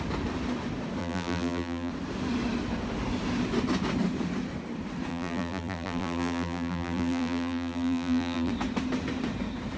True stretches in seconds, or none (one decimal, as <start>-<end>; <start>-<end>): 0.0-1.0; 1.9-5.1; 8.5-9.8